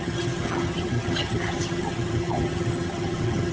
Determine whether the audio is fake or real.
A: fake